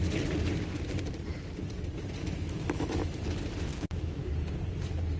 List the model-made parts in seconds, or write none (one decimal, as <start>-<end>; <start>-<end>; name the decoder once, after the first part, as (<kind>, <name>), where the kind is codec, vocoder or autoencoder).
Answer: 2.2-3.2 (autoencoder, DAC-VAE); 3.7-4.3